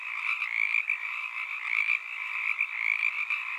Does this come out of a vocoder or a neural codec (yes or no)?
no